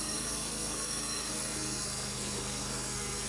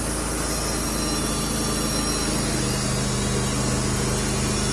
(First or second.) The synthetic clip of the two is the first